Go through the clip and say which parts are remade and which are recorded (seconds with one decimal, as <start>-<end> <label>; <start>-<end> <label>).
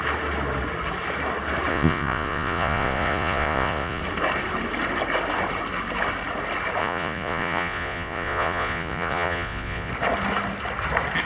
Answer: 0.0-1.7 recorded; 1.7-4.0 remade; 4.0-6.8 recorded; 6.8-9.9 remade; 9.9-11.3 recorded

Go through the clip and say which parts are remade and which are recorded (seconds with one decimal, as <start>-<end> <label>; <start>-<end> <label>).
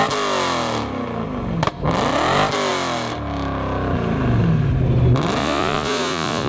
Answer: 0.0-5.4 recorded; 5.4-6.5 remade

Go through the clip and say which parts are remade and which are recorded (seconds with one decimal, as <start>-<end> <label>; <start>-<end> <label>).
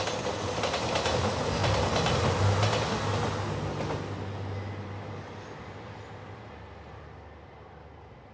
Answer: 0.0-8.3 recorded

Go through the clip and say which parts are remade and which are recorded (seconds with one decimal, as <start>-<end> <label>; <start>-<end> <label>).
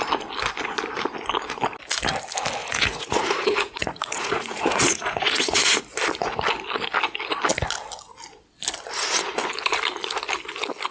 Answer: 0.0-2.6 recorded; 2.6-5.8 remade; 5.8-10.9 recorded